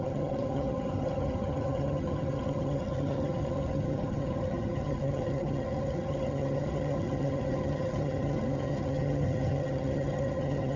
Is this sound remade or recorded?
remade